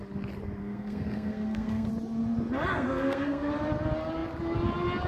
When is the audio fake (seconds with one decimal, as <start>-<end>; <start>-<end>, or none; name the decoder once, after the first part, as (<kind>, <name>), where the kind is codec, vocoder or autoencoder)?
0.6-1.9 (codec, SNAC); 2.7-3.5